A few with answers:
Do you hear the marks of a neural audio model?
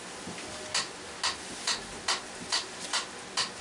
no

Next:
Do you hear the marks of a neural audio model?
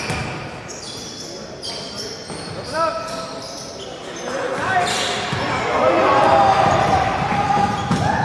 yes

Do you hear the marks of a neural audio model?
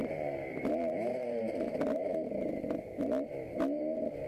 yes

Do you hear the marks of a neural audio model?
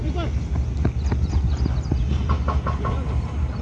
no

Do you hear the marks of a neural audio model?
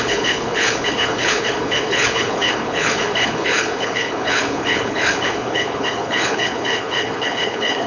yes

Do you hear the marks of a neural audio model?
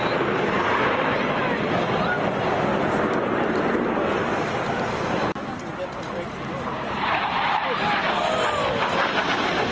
no